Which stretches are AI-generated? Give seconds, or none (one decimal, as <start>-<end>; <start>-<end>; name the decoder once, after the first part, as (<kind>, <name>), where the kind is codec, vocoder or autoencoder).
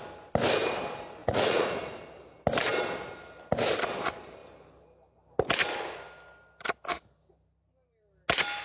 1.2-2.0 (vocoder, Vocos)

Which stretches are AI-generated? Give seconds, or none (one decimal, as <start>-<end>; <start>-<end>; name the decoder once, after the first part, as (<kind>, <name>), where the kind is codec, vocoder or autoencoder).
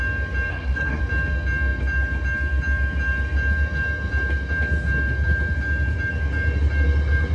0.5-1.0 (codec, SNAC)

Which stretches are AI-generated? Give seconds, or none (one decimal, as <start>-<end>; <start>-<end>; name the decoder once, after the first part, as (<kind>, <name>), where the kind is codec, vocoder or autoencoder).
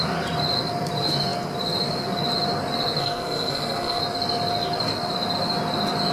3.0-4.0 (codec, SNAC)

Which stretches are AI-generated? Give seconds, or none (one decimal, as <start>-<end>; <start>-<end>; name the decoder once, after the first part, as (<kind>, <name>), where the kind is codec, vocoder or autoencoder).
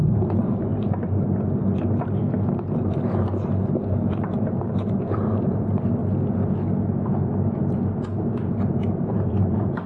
0.0-6.0 (vocoder, BigVGAN v2); 8.0-9.9